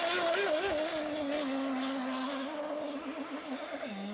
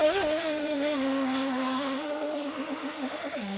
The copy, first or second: second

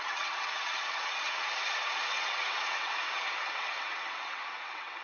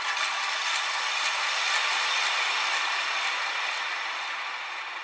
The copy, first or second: first